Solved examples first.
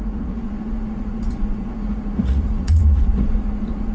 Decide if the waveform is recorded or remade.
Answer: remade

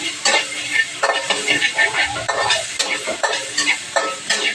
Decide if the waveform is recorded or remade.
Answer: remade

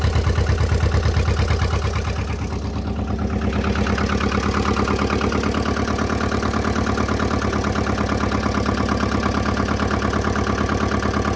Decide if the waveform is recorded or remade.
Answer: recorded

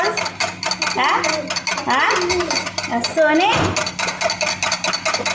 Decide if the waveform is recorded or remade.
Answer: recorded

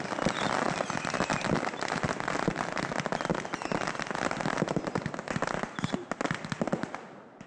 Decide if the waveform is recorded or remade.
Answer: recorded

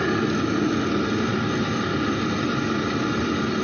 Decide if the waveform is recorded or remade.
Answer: recorded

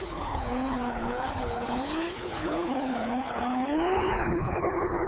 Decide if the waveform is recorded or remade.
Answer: remade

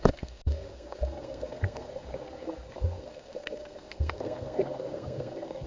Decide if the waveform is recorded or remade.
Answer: remade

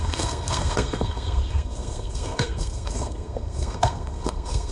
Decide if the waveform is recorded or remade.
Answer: remade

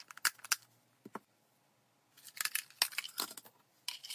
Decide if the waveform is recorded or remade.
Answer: recorded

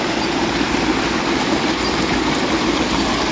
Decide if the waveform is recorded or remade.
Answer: recorded